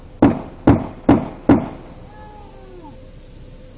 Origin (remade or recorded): recorded